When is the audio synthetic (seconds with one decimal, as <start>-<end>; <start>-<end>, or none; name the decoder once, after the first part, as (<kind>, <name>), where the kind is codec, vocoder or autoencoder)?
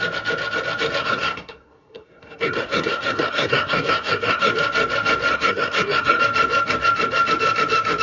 1.0-4.5 (codec, SNAC); 5.3-6.2